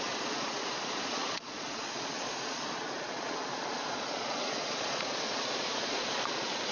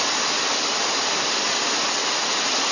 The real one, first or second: second